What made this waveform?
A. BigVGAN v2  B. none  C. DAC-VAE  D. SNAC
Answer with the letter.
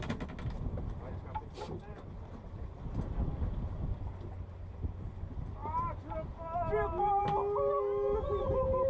B